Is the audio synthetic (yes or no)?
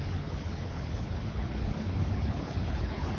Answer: yes